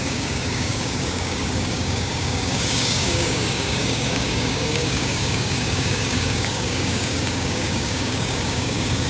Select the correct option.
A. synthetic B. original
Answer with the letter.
A